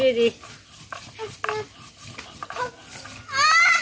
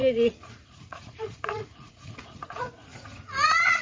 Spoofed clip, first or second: second